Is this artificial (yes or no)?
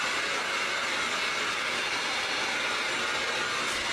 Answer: no